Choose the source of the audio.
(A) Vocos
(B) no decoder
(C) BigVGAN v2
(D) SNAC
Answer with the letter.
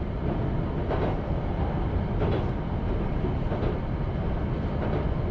B